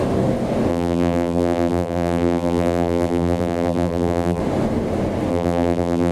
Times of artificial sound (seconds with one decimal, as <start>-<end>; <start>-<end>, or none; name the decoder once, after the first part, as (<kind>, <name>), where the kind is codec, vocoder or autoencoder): 0.7-4.4 (vocoder, BigVGAN v2); 5.3-6.1